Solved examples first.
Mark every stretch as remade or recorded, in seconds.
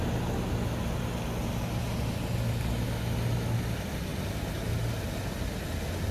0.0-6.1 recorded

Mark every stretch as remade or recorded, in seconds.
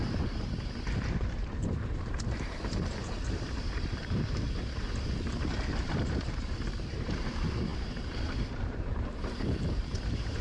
0.0-10.4 remade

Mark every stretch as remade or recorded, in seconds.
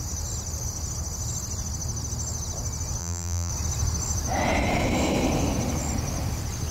0.0-3.0 recorded; 3.0-3.5 remade; 3.5-6.7 recorded